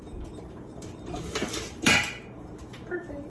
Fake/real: fake